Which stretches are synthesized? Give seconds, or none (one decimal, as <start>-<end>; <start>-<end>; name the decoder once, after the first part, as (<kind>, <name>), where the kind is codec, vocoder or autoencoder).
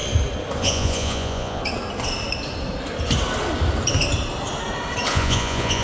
0.6-1.6 (vocoder, Vocos); 5.1-5.8